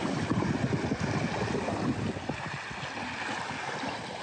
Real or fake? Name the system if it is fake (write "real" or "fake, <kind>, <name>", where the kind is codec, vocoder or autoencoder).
real